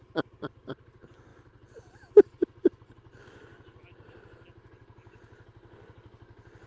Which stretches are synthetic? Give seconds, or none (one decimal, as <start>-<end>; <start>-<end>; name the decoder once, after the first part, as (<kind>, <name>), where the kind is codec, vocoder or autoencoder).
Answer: none